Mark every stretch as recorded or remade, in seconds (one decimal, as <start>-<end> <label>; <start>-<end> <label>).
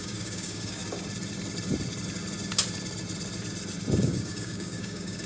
0.0-0.8 remade; 0.8-4.0 recorded; 4.0-5.3 remade